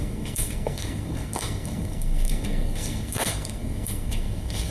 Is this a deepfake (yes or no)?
yes